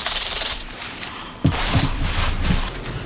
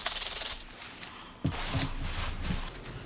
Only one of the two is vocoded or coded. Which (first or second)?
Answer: first